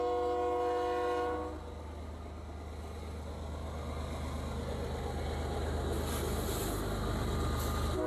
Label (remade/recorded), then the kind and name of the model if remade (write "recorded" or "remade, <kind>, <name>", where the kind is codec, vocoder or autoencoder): recorded